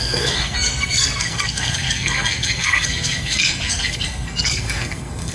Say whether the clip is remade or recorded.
remade